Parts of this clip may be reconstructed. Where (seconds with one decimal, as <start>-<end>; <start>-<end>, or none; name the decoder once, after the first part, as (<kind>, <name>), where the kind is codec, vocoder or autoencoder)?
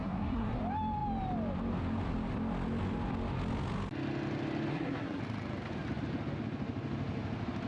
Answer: 0.0-0.6 (codec, SNAC); 4.7-5.2